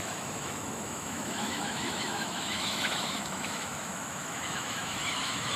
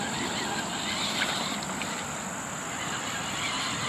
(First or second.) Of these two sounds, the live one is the second